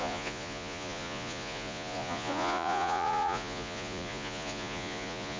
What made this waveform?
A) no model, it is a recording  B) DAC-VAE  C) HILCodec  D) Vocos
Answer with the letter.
D